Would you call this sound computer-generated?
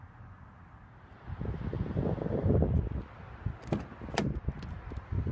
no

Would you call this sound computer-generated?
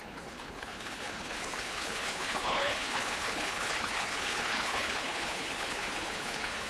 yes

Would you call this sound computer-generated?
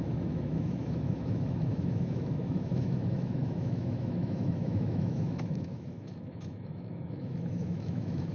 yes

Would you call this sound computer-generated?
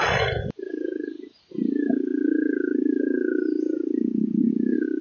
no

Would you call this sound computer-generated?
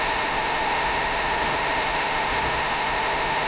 yes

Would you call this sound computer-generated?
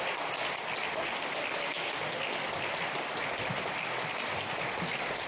no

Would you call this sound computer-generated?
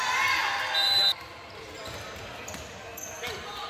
no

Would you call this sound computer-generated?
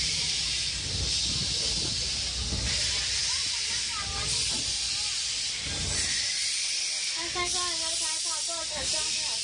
no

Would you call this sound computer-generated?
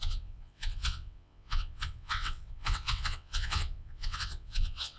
yes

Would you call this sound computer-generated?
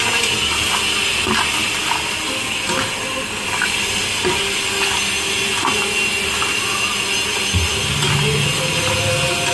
no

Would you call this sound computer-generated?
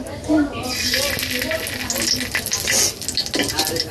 no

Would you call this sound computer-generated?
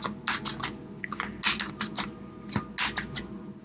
no